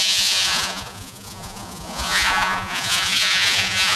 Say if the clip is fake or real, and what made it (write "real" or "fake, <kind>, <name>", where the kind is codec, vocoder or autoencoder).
fake, vocoder, Vocos